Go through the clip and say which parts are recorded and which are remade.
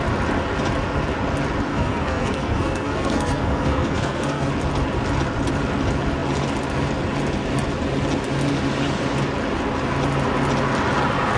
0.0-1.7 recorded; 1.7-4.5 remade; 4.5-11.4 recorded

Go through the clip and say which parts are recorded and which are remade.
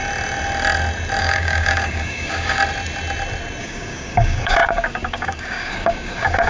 0.0-1.2 recorded; 1.2-2.6 remade; 2.6-3.6 recorded; 3.6-6.5 remade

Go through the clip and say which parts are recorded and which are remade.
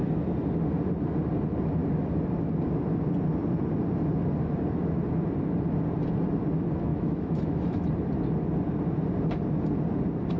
0.0-6.9 recorded; 6.9-7.9 remade; 7.9-10.4 recorded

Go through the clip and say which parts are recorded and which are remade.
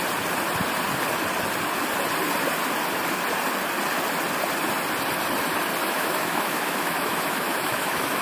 0.0-5.8 recorded; 5.8-8.2 remade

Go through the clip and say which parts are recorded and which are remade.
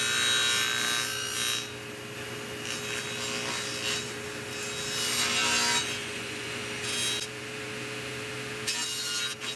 0.0-6.0 recorded; 6.0-6.6 remade; 6.6-9.6 recorded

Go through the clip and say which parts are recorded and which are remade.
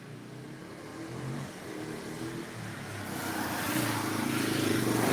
0.0-0.9 recorded; 0.9-1.5 remade; 1.5-5.1 recorded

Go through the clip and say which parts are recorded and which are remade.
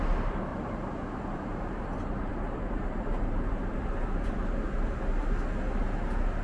0.0-0.5 recorded; 0.5-1.8 remade; 1.8-2.3 recorded; 2.3-4.6 remade; 4.6-6.4 recorded